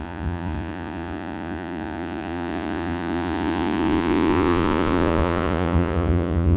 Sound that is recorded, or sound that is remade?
remade